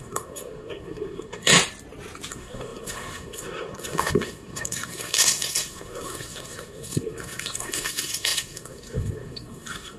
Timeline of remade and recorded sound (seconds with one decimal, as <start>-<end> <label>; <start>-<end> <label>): 0.0-1.5 remade; 1.5-2.3 recorded; 2.3-10.0 remade